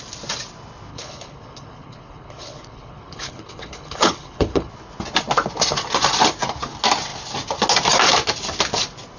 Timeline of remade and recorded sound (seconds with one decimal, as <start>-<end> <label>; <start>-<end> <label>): 0.0-0.9 recorded; 0.9-4.7 remade; 4.7-9.2 recorded